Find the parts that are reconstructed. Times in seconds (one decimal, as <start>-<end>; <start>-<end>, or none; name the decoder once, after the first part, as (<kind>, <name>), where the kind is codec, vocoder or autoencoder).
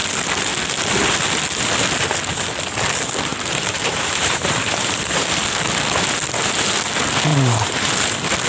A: 3.3-5.4 (vocoder, BigVGAN v2); 7.3-7.9